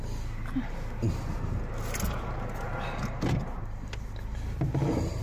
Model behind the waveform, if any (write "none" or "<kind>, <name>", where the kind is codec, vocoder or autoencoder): none